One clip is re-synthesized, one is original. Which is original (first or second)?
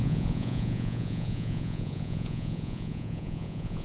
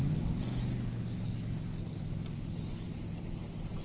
second